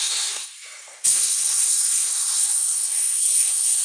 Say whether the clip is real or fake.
fake